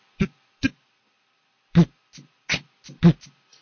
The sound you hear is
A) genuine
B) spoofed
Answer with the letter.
A